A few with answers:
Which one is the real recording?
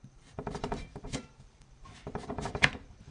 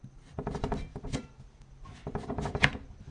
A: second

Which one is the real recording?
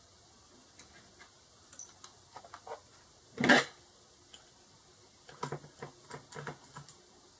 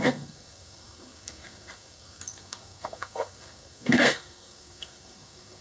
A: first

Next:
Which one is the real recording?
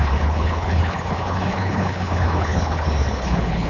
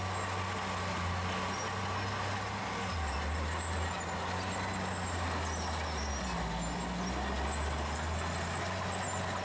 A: second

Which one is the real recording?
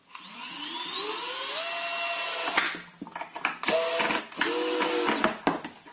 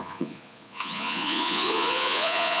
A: first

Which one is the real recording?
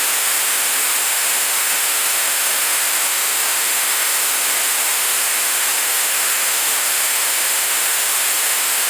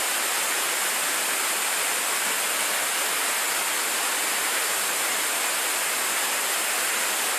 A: second